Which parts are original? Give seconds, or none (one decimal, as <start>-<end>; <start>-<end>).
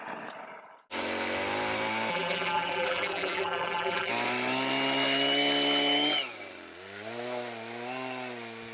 0.0-2.1; 4.1-8.7